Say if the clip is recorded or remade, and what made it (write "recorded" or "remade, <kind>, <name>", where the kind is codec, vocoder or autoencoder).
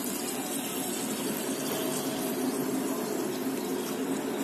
recorded